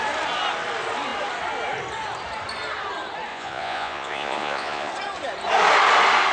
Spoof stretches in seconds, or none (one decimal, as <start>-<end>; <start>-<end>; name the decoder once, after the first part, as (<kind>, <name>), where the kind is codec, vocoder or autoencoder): 3.3-4.9 (vocoder, Vocos)